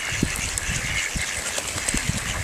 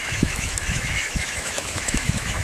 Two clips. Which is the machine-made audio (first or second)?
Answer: second